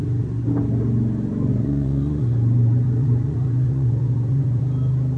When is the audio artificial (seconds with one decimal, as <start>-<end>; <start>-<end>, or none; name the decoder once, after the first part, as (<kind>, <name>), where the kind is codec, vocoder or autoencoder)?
1.5-4.6 (vocoder, Vocos)